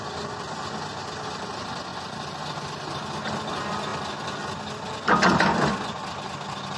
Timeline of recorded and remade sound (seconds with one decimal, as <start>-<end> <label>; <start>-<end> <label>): 0.0-6.8 recorded

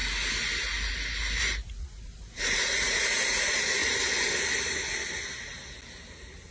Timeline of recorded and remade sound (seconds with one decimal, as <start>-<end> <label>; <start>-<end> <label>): 0.0-1.4 recorded; 1.4-3.8 remade; 3.8-6.5 recorded

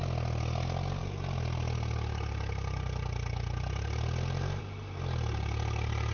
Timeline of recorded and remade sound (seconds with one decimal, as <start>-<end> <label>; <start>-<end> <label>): 0.0-6.1 recorded

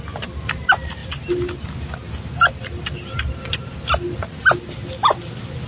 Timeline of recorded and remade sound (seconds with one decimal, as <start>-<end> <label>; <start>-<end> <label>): 0.0-5.7 recorded